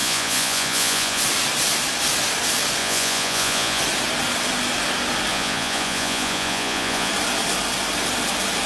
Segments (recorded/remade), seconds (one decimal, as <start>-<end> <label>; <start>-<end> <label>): 0.0-1.2 remade; 1.2-2.8 recorded; 2.8-3.8 remade; 3.8-5.3 recorded; 5.3-7.1 remade; 7.1-8.7 recorded